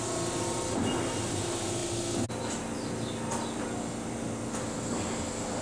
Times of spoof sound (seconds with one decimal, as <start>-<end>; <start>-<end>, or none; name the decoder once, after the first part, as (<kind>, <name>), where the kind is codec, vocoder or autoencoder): none